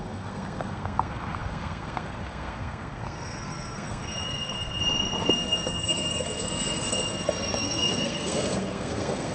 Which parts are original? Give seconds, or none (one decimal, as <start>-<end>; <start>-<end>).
4.8-5.3